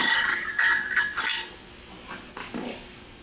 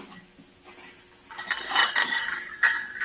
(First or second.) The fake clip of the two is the first